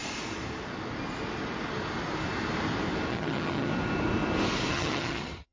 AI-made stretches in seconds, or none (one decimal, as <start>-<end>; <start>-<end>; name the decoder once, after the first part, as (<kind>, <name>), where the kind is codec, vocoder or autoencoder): 3.1-3.7 (vocoder, HiFi-GAN); 4.7-5.5

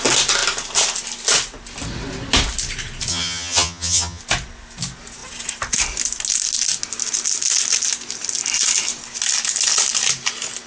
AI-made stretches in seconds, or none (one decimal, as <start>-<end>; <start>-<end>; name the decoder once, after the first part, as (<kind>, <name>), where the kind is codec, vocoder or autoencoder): 3.1-4.2 (vocoder, HiFi-GAN)

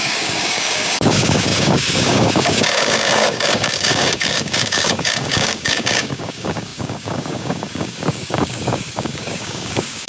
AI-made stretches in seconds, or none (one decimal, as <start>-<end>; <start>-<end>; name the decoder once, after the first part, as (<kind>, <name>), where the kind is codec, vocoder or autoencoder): 0.0-10.1 (codec, DAC)